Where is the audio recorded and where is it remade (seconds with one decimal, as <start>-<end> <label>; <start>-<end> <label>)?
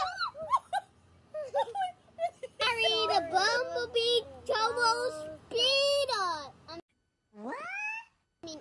0.0-8.6 recorded